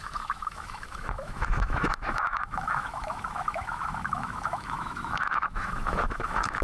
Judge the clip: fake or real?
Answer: fake